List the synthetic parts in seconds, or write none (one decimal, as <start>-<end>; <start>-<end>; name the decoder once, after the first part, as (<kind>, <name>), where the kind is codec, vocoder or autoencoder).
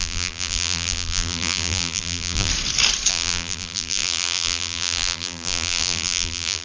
0.0-2.5 (vocoder, BigVGAN v2); 3.1-6.6